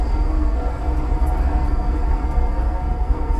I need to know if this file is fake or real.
fake